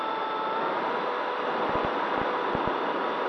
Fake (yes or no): yes